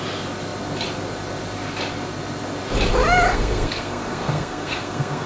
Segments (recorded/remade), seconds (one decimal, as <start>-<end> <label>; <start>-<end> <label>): 0.0-3.3 recorded; 3.3-5.3 remade